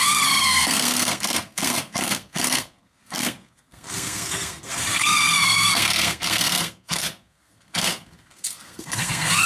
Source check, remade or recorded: remade